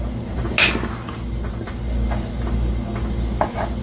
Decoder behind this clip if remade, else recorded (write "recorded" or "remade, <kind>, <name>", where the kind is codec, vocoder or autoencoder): recorded